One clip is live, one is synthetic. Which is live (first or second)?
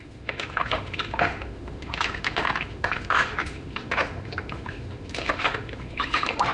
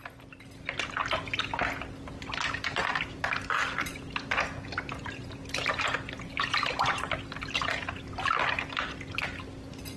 second